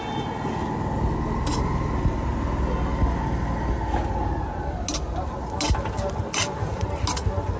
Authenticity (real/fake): real